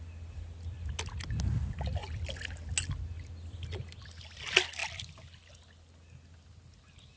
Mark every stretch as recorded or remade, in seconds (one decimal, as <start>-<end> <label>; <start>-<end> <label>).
0.0-7.2 recorded